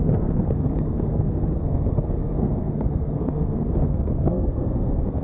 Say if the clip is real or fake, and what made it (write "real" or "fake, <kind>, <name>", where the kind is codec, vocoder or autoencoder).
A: fake, codec, SNAC